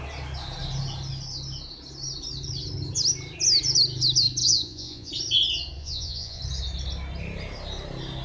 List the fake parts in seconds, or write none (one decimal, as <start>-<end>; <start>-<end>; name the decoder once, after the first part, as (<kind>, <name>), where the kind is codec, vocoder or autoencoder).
4.4-5.1 (vocoder, Vocos); 5.8-6.4